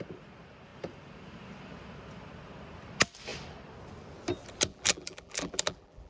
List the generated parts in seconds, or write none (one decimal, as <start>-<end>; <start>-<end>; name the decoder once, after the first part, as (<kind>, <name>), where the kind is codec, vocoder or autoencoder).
4.7-6.1 (vocoder, BigVGAN v2)